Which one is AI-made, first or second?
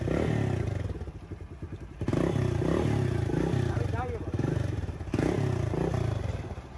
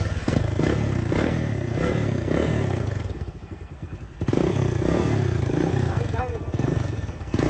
second